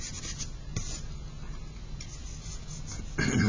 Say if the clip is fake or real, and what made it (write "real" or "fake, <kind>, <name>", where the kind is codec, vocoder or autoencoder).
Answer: real